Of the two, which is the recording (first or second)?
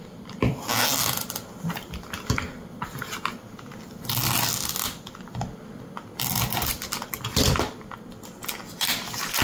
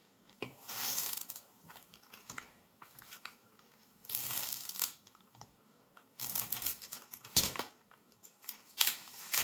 first